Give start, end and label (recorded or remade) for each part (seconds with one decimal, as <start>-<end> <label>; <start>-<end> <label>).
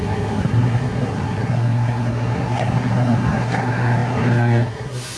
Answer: 0.0-5.2 remade